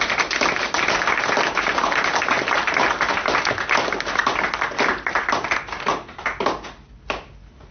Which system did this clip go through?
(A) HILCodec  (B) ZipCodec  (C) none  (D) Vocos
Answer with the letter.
C